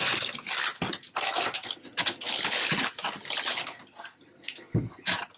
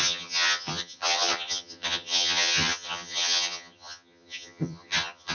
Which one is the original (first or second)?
first